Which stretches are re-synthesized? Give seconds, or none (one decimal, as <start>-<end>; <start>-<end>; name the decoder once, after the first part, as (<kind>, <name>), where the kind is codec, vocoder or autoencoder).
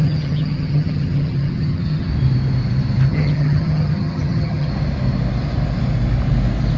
0.0-2.1 (vocoder, HiFi-GAN); 3.1-4.7